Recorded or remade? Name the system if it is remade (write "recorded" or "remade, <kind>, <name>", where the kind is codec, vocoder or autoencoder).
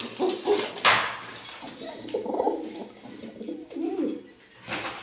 recorded